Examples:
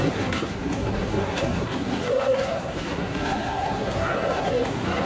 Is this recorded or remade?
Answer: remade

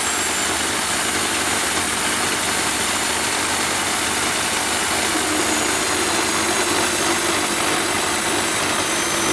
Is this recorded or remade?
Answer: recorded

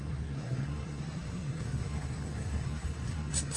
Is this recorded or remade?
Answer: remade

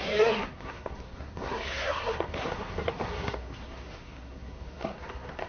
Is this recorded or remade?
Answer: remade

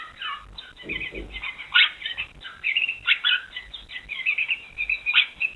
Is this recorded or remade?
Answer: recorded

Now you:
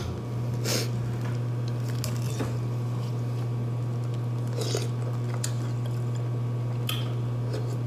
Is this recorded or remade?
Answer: recorded